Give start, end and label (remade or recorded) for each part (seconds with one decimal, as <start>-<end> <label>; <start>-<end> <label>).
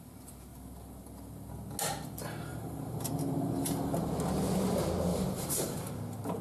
0.0-2.5 recorded; 2.5-4.1 remade; 4.1-5.1 recorded; 5.1-5.9 remade; 5.9-6.4 recorded